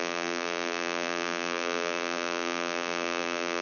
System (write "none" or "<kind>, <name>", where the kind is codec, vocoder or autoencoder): vocoder, BigVGAN v2